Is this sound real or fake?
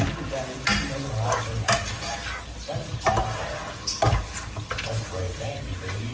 real